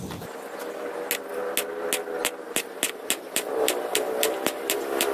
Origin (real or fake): real